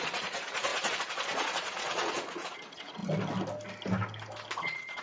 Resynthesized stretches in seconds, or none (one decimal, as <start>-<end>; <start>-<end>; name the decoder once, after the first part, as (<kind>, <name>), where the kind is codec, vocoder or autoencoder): 0.0-3.0 (vocoder, Vocos); 4.6-5.0